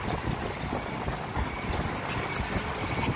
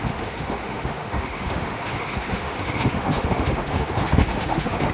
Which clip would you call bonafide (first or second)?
first